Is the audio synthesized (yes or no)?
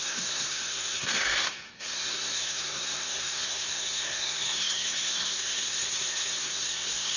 yes